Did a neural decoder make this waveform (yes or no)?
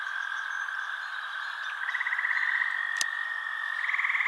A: no